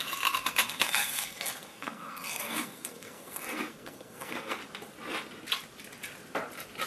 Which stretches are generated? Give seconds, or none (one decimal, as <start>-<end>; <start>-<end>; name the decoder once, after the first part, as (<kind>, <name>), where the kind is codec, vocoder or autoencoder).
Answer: 0.0-4.6 (codec, SNAC)